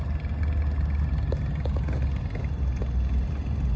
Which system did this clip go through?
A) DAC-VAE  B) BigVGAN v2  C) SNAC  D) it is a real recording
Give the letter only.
D